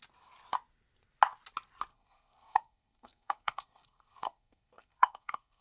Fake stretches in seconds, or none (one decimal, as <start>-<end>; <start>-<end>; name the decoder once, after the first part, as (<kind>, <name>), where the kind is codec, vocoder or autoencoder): 1.9-5.6 (codec, SNAC)